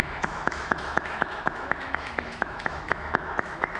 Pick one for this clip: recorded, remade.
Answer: remade